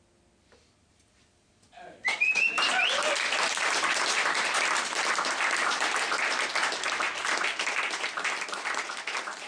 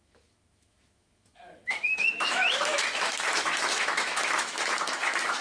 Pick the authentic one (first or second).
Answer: first